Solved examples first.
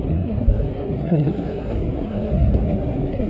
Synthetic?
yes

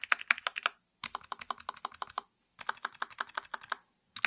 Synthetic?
no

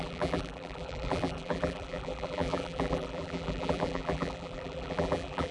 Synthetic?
yes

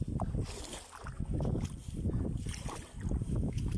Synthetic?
no